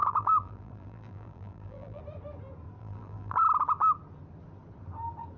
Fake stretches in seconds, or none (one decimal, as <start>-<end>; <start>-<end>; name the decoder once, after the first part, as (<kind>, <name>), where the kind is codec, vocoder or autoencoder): 0.0-2.0 (vocoder, BigVGAN v2); 2.8-3.4